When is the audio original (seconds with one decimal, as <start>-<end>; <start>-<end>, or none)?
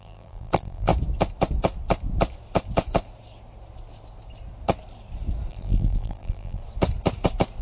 0.9-5.5; 6.6-7.6